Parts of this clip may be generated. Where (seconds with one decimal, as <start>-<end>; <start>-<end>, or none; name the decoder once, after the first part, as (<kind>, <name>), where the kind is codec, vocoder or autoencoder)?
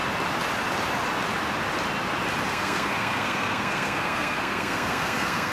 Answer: 2.5-5.5 (codec, SNAC)